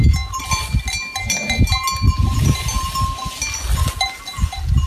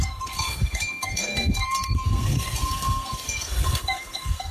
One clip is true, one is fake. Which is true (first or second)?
first